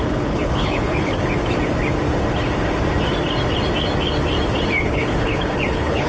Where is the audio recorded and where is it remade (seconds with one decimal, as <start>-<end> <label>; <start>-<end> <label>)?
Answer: 0.0-1.1 remade; 1.1-4.8 recorded; 4.8-6.1 remade